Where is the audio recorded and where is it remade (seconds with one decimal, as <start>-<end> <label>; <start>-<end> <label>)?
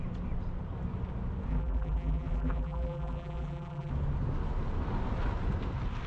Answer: 0.0-1.5 recorded; 1.5-3.9 remade; 3.9-6.1 recorded